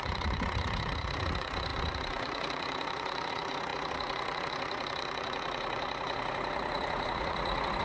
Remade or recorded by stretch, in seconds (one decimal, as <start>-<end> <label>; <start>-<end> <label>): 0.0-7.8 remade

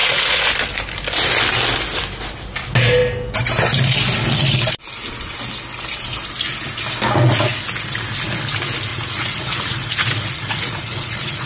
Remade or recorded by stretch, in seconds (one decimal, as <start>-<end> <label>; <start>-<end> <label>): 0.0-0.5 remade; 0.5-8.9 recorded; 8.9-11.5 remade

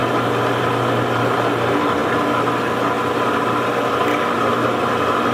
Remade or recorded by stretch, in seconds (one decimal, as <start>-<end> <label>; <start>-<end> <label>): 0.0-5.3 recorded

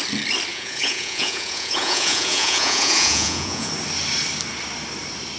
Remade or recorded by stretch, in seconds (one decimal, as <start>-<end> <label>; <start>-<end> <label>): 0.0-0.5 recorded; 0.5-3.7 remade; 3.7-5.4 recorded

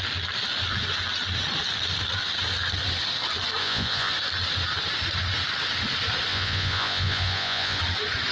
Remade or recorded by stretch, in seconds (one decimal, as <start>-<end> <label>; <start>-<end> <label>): 0.0-3.6 recorded; 3.6-4.1 remade; 4.1-6.3 recorded; 6.3-7.8 remade; 7.8-8.3 recorded

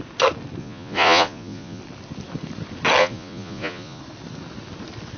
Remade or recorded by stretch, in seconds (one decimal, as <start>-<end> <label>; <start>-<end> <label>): 0.0-0.6 recorded; 0.6-1.8 remade; 1.8-3.0 recorded; 3.0-4.0 remade; 4.0-5.2 recorded